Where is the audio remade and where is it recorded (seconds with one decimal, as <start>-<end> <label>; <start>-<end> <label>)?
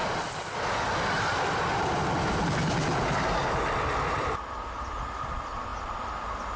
0.0-4.0 recorded; 4.0-5.7 remade; 5.7-6.6 recorded